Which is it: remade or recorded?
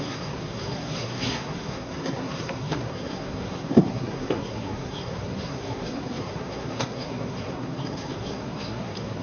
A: remade